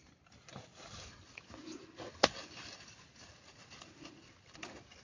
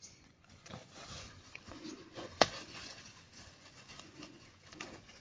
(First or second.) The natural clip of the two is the first